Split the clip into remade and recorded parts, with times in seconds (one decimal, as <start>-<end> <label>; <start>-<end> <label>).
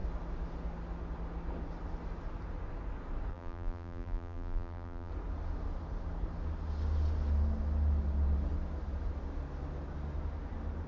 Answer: 0.0-3.3 recorded; 3.3-5.1 remade; 5.1-10.9 recorded